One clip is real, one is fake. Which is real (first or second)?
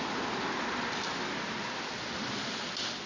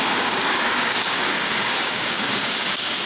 first